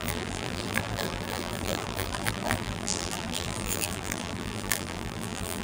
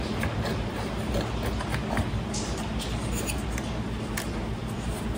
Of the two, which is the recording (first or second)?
second